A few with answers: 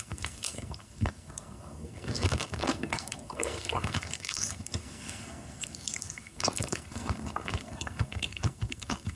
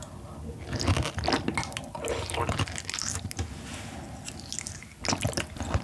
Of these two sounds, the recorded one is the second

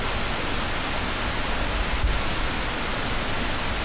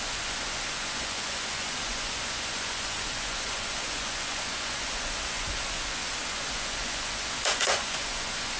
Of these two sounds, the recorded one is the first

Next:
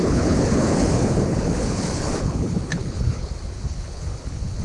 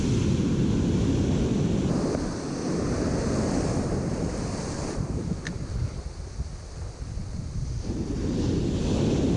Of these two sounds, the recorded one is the second